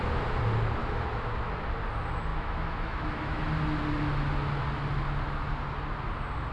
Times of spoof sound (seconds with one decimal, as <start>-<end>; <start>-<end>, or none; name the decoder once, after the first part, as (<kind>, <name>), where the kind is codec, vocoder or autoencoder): 0.8-1.5 (autoencoder, DAC-VAE); 2.3-3.4

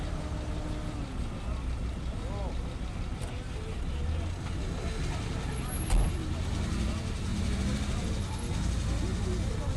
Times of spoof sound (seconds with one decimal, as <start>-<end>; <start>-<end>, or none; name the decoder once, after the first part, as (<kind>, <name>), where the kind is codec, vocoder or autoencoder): none

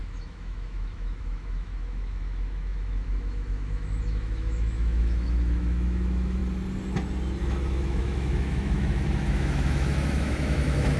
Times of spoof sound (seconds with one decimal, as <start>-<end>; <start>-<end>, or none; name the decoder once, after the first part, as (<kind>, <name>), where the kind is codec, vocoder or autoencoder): 0.0-6.4 (autoencoder, DAC-VAE); 7.4-11.0

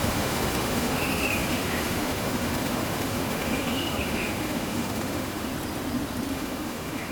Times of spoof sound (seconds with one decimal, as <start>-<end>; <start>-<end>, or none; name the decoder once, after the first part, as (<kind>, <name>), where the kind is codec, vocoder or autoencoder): 0.0-5.5 (autoencoder, DAC-VAE); 6.3-7.1

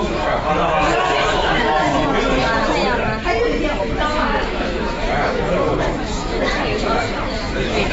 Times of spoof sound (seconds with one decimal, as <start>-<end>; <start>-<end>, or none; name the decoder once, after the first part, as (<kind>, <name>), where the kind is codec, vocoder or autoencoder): 0.0-1.9 (autoencoder, DAC-VAE); 3.8-7.9

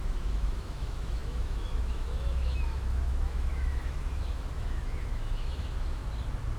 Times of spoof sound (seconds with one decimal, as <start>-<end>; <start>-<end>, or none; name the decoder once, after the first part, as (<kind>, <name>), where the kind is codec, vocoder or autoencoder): 0.0-6.0 (autoencoder, DAC-VAE)

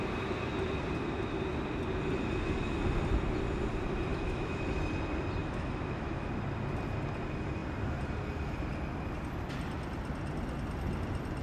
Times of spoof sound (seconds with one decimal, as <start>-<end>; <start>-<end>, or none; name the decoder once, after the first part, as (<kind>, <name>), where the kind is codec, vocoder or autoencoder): 4.1-4.6 (autoencoder, DAC-VAE); 5.4-6.3